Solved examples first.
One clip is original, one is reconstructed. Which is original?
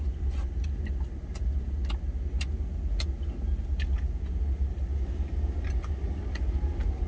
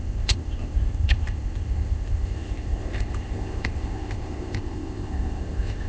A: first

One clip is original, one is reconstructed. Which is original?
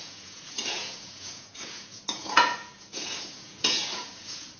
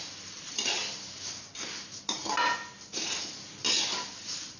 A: second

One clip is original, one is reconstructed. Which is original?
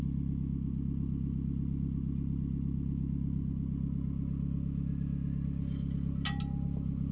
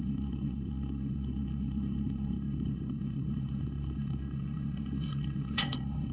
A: first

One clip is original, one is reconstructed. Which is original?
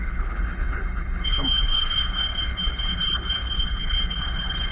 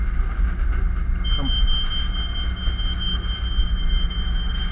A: second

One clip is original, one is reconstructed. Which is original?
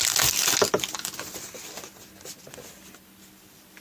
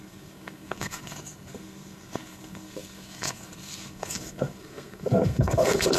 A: first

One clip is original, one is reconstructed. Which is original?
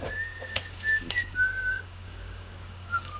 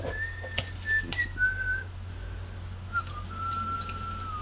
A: second